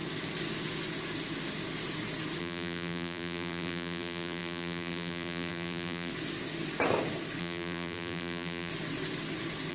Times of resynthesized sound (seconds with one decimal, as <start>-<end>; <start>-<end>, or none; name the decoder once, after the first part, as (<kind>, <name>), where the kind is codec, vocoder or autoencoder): 2.4-6.1 (vocoder, BigVGAN v2); 7.4-8.7